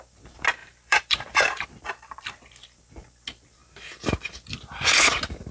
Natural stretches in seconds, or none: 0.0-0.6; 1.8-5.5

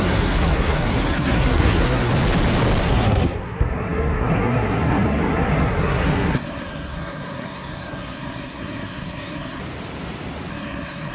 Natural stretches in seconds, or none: 2.1-2.8; 9.6-10.5

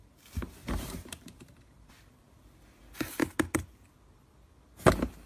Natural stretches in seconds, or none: 0.0-0.6; 1.9-5.3

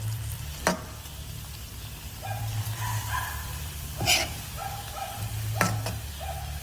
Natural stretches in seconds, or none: 4.6-6.6

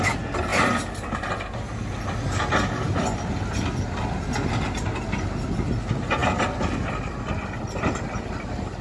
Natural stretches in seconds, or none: 0.0-8.8

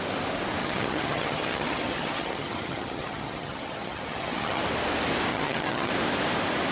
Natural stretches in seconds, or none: 0.0-0.6; 4.6-5.3; 5.9-6.7

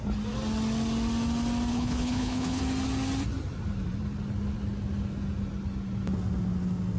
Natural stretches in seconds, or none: 0.0-1.7; 2.6-7.0